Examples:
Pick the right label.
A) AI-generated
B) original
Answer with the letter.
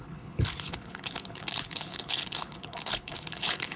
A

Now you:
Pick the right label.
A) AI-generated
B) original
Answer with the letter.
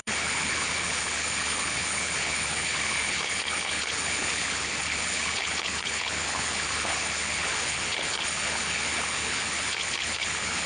A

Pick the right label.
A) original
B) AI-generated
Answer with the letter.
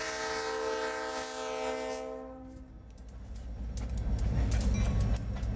A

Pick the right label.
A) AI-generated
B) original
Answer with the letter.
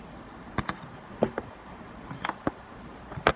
B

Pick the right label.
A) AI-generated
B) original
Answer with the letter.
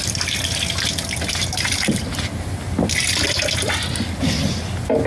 B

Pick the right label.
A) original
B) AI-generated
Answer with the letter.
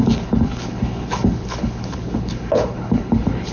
B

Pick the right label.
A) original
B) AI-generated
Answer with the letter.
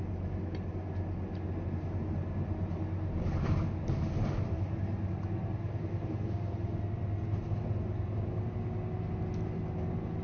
A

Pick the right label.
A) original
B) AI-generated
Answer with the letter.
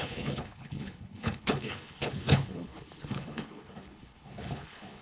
B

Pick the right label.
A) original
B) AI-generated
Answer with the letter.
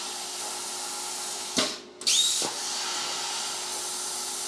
A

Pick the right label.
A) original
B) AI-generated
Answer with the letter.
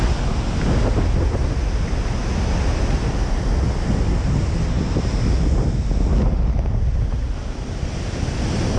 A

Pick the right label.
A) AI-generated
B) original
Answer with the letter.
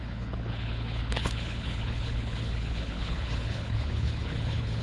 A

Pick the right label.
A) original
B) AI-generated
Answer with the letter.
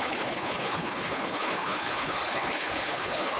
B